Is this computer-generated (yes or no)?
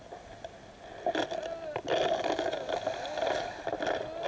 no